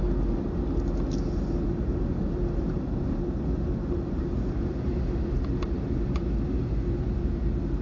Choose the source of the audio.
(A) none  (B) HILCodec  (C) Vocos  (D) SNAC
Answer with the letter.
A